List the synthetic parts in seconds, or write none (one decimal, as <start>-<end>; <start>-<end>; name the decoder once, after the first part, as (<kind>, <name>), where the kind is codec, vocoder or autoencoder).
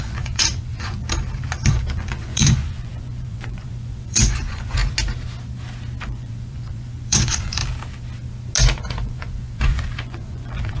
0.0-1.0 (vocoder, Vocos); 1.7-4.8; 6.0-7.6; 8.8-10.8